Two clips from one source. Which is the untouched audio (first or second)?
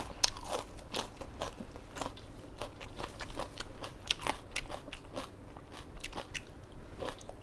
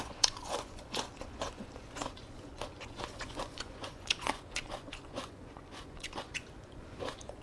first